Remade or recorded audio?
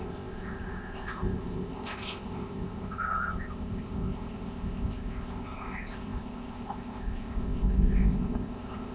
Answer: remade